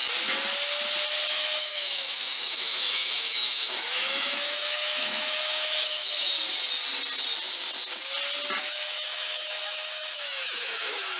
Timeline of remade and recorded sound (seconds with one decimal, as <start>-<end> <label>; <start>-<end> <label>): 0.0-1.3 recorded; 1.3-6.3 remade; 6.3-8.6 recorded; 8.6-11.2 remade

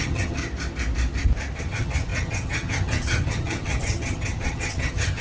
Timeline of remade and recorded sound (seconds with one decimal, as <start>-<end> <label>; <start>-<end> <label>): 0.0-0.4 remade; 0.4-1.6 recorded; 1.6-5.2 remade